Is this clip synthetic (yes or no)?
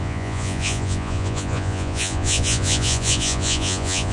yes